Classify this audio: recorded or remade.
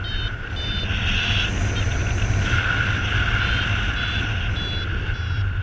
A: recorded